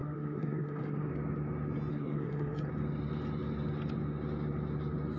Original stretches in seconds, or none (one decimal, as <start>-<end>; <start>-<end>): 1.1-1.9; 2.7-5.2